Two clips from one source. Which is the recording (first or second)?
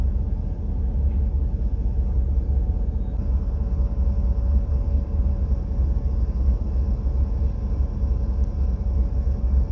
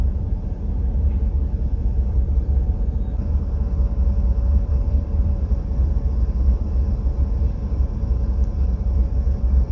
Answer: first